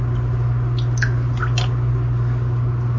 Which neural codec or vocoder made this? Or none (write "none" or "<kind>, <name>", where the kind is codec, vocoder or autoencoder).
none